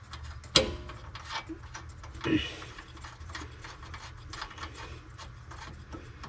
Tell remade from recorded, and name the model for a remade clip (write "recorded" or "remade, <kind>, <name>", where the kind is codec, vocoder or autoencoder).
recorded